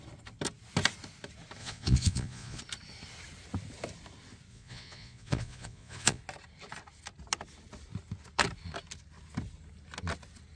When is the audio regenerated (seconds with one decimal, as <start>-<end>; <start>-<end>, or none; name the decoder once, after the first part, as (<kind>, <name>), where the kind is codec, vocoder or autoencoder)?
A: 1.6-2.6 (vocoder, Vocos); 4.5-6.2